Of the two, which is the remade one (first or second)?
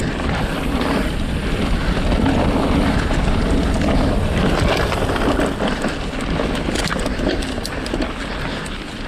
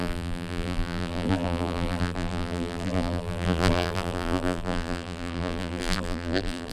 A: second